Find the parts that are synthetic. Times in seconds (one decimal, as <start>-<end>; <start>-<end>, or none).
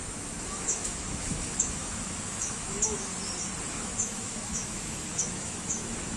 0.0-3.1; 3.7-6.2